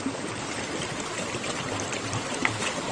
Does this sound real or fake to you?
real